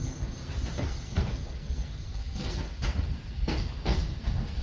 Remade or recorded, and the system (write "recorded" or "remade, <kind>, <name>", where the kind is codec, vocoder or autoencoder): remade, codec, SNAC